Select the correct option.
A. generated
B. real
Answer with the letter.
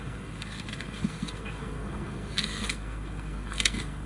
A